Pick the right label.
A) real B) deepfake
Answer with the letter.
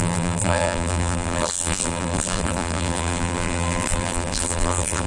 B